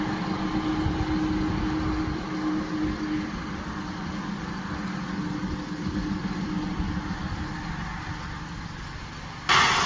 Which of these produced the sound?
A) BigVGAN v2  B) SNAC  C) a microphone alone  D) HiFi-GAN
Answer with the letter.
C